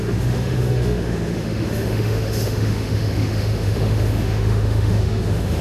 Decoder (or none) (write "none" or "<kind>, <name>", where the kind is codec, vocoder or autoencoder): autoencoder, DAC-VAE